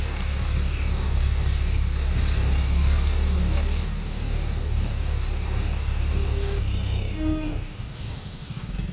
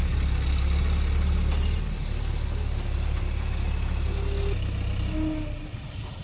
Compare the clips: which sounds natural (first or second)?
second